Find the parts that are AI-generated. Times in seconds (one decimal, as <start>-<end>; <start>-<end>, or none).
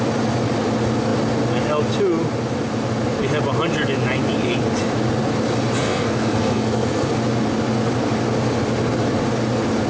5.8-7.1